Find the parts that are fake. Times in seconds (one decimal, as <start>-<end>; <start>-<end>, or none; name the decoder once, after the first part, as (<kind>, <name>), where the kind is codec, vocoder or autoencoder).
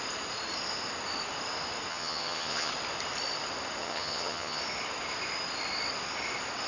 1.9-2.7 (vocoder, HiFi-GAN); 3.8-4.6